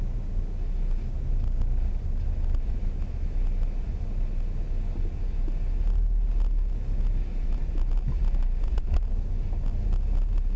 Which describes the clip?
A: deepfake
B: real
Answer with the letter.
B